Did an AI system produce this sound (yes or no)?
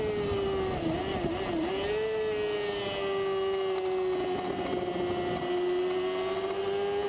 no